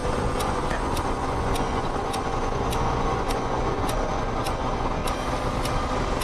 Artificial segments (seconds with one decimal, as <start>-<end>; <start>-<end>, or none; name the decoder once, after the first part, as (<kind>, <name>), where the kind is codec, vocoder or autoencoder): 0.0-5.0 (vocoder, Vocos)